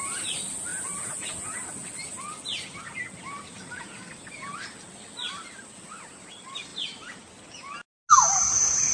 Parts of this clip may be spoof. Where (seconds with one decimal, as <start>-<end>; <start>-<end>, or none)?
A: 6.7-7.3